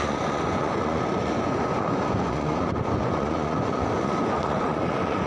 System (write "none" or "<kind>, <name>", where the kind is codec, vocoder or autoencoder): vocoder, Vocos